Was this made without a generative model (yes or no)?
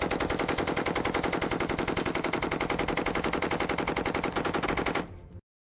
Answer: yes